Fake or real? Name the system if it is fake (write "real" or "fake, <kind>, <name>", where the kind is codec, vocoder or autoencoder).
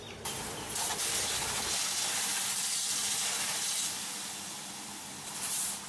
fake, vocoder, BigVGAN v2